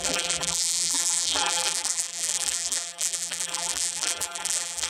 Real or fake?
fake